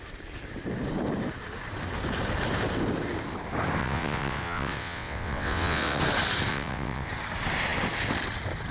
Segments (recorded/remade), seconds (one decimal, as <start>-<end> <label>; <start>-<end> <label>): 0.0-3.8 recorded; 3.8-6.0 remade; 6.0-6.5 recorded; 6.5-7.1 remade; 7.1-8.7 recorded